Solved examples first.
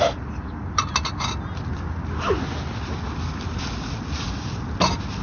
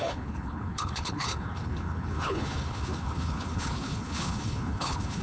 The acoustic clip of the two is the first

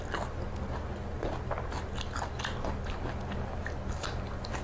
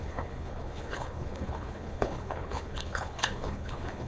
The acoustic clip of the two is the first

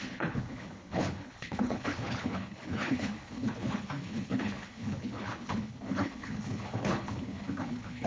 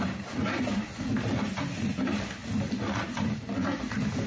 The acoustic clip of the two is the second